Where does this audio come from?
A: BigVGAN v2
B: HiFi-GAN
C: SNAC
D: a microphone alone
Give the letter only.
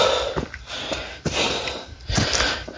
D